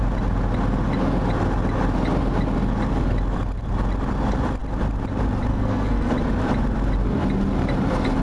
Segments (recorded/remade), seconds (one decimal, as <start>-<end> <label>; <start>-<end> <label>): 0.0-5.5 recorded; 5.5-6.1 remade; 6.1-8.2 recorded